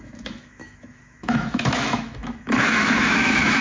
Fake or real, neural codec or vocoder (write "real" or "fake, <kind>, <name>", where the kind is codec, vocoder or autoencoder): fake, autoencoder, DAC-VAE